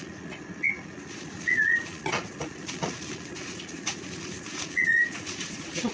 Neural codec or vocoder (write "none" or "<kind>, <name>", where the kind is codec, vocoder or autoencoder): vocoder, Vocos